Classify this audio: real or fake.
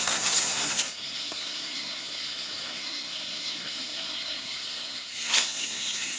fake